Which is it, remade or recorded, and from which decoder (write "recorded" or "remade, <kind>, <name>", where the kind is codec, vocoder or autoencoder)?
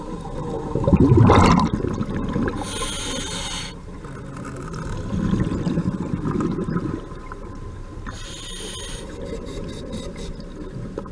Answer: recorded